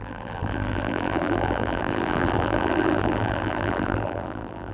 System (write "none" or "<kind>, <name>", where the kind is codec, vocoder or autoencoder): vocoder, BigVGAN v2